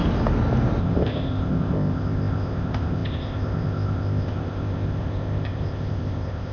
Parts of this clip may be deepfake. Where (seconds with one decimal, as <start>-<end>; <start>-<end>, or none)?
0.8-6.5